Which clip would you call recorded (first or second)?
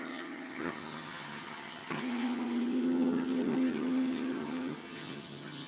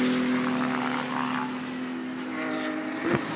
second